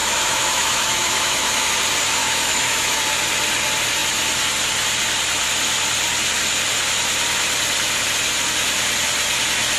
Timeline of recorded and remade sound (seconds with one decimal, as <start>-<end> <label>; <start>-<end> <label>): 0.0-1.7 remade; 1.7-2.2 recorded; 2.2-3.0 remade; 3.0-9.8 recorded